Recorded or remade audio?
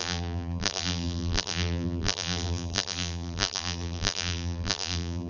remade